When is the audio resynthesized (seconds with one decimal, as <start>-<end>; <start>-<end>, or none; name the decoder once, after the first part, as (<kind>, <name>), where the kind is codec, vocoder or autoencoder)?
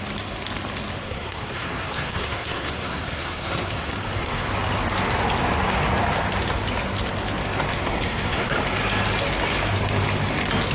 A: 1.0-4.5 (codec, SNAC); 7.7-8.6